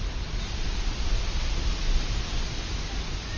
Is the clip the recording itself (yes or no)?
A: yes